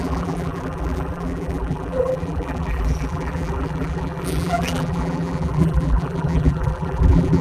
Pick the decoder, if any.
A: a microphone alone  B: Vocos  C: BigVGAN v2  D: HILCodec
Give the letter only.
C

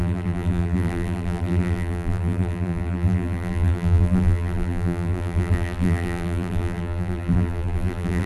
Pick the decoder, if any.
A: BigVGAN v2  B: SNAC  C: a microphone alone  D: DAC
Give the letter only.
A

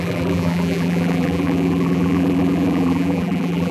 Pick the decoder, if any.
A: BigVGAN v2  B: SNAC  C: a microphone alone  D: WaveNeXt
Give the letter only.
A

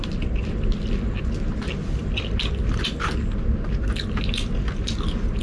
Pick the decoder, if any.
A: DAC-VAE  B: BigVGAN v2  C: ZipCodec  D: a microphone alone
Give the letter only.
D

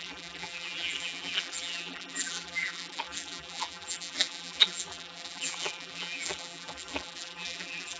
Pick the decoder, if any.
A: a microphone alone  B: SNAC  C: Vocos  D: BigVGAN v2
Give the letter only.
D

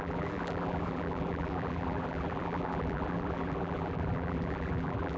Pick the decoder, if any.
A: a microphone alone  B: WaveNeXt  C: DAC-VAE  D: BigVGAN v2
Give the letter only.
D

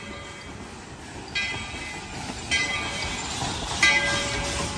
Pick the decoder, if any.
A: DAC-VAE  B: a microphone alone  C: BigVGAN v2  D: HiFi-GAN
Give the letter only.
B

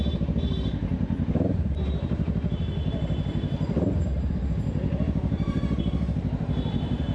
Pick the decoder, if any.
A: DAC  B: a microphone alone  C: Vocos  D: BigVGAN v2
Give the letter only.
D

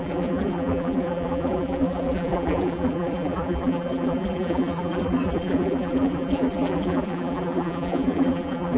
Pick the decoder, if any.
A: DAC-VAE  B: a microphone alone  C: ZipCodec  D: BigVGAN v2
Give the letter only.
D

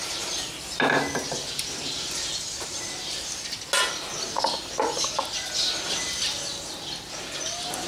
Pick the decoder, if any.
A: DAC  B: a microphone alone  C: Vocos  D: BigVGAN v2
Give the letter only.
B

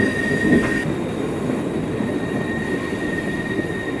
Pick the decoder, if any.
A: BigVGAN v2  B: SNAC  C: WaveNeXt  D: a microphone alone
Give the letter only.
D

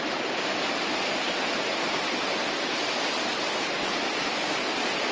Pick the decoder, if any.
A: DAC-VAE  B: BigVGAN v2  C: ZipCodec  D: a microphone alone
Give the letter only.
D